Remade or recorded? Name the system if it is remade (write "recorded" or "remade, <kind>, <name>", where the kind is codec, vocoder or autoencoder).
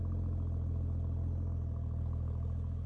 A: recorded